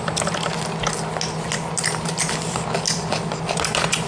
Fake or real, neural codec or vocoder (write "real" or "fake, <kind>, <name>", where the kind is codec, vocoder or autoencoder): real